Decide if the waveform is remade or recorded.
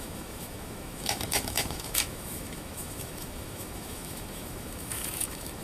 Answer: remade